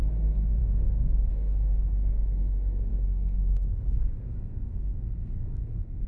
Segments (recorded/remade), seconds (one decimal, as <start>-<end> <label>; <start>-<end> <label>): 0.0-6.1 remade

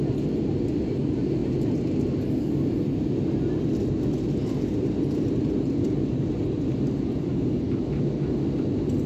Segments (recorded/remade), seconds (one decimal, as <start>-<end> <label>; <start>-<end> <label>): 0.0-9.1 recorded

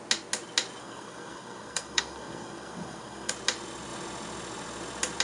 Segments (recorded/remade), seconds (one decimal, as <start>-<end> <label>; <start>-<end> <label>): 0.0-0.8 recorded; 0.8-3.3 remade; 3.3-5.2 recorded